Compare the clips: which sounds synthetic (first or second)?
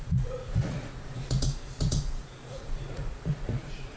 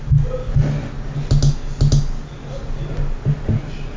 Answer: first